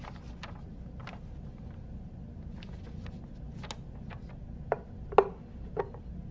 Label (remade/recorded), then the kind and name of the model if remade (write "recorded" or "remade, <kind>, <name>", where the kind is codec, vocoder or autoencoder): recorded